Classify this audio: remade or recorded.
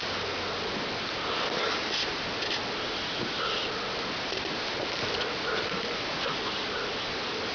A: recorded